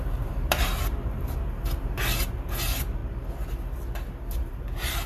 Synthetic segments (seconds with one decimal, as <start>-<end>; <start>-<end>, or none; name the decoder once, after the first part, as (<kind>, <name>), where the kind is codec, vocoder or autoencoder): 0.0-3.0 (vocoder, BigVGAN v2); 4.2-5.1